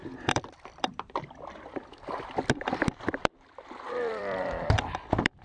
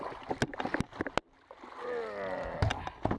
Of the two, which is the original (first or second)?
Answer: second